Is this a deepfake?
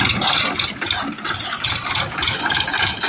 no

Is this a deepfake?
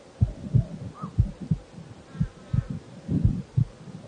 no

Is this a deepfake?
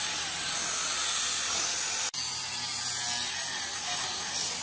no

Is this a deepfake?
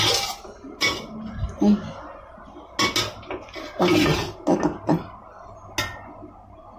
no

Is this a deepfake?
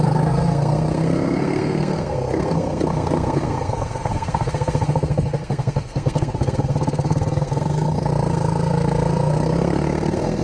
yes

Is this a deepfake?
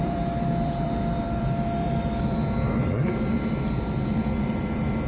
yes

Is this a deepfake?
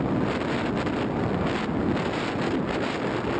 no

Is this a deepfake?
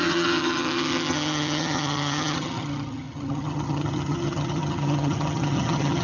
yes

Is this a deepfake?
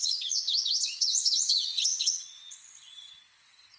yes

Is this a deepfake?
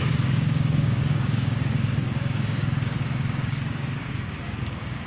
yes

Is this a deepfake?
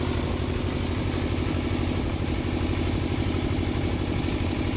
no